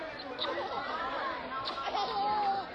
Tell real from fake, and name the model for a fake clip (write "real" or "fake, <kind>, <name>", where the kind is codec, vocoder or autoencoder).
real